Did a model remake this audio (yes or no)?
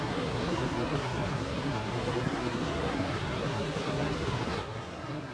yes